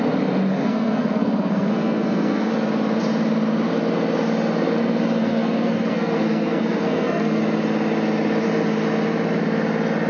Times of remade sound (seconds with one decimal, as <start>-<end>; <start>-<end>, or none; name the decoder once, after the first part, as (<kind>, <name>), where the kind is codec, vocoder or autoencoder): 0.5-2.5 (codec, SNAC); 5.2-7.4